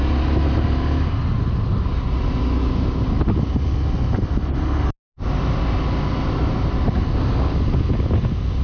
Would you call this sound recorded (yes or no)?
yes